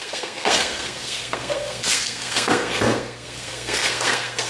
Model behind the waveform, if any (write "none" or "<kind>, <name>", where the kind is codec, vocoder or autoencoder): codec, SNAC